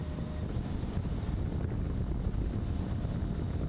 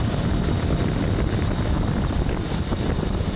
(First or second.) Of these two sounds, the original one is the first